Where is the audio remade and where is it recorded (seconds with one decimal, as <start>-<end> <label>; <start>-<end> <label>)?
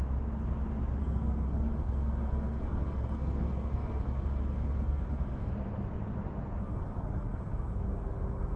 0.0-1.0 recorded; 1.0-5.5 remade; 5.5-6.6 recorded; 6.6-8.6 remade